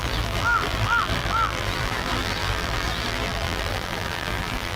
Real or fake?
fake